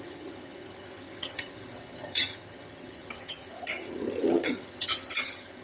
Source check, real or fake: fake